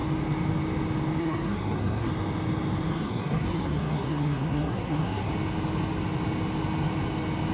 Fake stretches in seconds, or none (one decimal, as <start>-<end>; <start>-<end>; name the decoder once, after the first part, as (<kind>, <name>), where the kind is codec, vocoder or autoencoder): 1.2-2.1 (codec, SNAC); 2.9-5.3